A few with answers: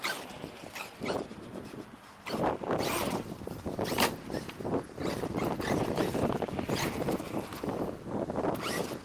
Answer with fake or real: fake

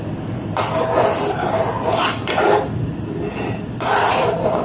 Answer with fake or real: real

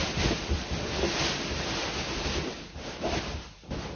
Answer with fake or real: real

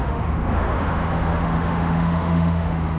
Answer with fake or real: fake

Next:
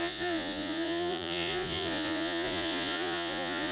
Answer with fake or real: fake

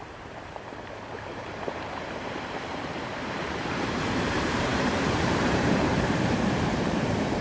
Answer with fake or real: fake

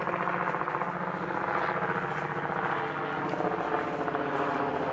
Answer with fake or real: real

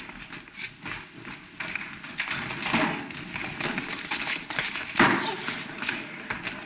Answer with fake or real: real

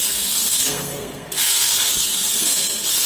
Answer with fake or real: fake